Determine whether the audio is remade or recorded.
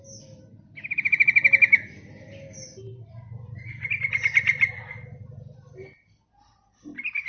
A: recorded